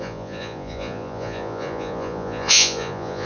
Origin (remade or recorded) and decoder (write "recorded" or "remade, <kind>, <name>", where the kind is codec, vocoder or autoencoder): remade, vocoder, Vocos